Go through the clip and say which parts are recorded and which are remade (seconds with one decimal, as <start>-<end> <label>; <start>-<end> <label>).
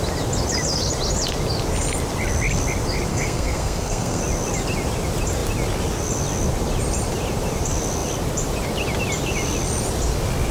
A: 0.0-3.1 recorded; 3.1-4.2 remade; 4.2-10.5 recorded